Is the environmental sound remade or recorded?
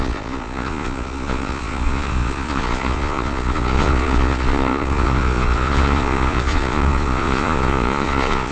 remade